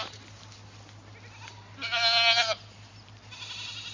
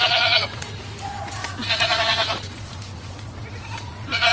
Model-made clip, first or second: second